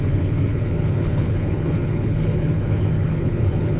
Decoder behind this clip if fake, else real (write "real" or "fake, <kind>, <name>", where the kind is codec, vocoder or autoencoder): fake, codec, HILCodec